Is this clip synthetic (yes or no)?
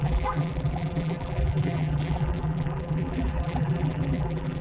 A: yes